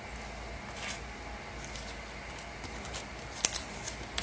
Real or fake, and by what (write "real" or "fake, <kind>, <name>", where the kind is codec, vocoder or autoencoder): real